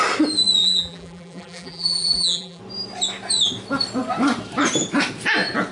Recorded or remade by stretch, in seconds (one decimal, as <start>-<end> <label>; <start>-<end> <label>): 0.0-0.6 recorded; 0.6-2.6 remade; 2.6-5.7 recorded